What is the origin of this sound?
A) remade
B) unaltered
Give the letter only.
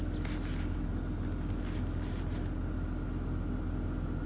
B